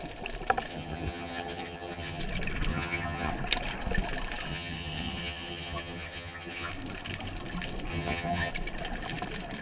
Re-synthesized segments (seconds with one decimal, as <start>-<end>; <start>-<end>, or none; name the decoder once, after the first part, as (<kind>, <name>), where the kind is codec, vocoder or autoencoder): 0.7-2.2 (vocoder, HiFi-GAN); 2.7-3.3; 4.5-6.7; 7.9-8.5